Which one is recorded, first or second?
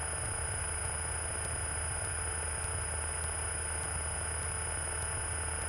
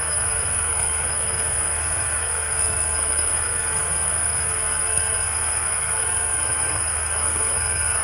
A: first